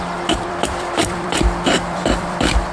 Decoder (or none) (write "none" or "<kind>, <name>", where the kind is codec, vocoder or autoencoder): vocoder, BigVGAN v2